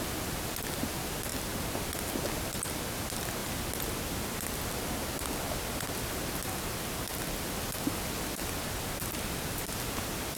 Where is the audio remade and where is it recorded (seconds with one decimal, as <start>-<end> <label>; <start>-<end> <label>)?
0.0-10.4 recorded